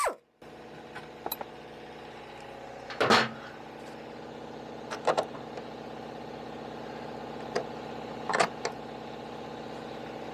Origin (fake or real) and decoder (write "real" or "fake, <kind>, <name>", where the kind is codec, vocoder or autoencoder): real